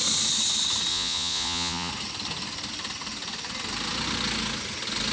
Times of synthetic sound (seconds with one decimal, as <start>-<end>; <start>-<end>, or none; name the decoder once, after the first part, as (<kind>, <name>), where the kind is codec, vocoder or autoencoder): 0.9-1.9 (vocoder, Vocos)